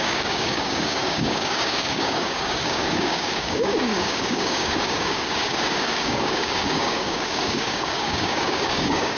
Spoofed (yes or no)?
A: yes